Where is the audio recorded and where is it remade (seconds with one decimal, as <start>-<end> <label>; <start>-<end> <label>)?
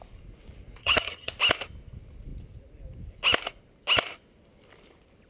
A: 0.0-0.8 recorded; 0.8-1.3 remade; 1.3-5.3 recorded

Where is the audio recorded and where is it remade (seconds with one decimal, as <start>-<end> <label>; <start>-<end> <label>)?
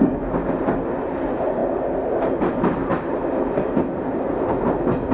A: 0.0-5.1 recorded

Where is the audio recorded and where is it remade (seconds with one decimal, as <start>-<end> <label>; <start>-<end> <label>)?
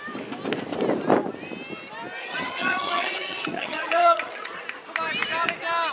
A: 0.0-2.2 recorded; 2.2-4.6 remade; 4.6-5.9 recorded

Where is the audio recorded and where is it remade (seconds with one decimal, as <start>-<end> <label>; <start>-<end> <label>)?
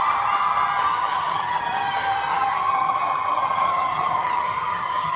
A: 0.0-0.9 recorded; 0.9-1.6 remade; 1.6-2.3 recorded; 2.3-5.2 remade